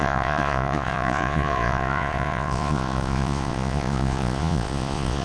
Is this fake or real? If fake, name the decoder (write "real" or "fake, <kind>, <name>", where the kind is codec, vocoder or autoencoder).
fake, vocoder, Vocos